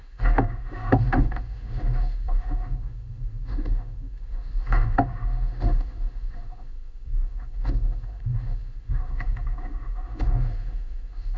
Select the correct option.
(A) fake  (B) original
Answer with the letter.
A